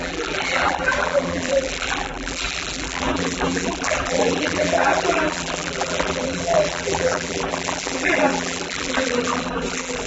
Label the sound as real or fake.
fake